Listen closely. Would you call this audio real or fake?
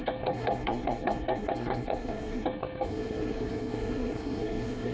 fake